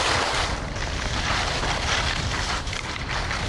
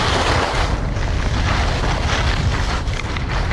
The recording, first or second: second